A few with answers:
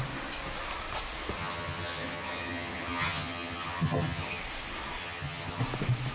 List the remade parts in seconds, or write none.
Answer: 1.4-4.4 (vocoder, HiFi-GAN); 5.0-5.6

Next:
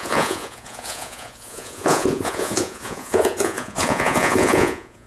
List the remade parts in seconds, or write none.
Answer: 0.0-5.1 (vocoder, Vocos)

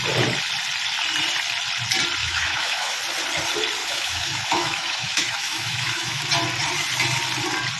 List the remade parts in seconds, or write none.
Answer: 2.2-3.0 (autoencoder, DAC-VAE); 3.8-6.2

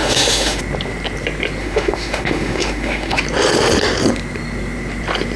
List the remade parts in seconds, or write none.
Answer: 0.0-0.6 (autoencoder, DAC-VAE); 1.6-3.2